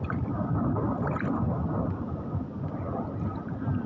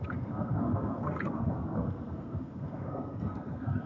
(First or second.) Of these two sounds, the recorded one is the first